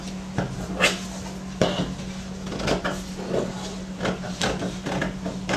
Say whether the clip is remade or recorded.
recorded